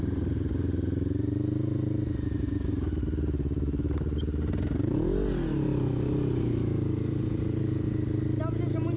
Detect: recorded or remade recorded